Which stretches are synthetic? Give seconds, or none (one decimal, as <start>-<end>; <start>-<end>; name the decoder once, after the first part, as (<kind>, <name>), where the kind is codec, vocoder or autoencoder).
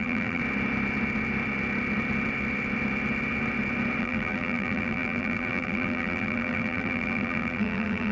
0.0-0.4 (vocoder, BigVGAN v2); 4.0-8.1